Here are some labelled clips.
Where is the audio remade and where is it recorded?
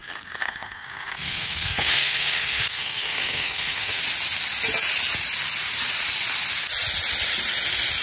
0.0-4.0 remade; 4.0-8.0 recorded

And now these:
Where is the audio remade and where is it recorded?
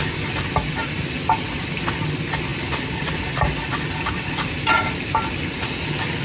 0.0-6.2 recorded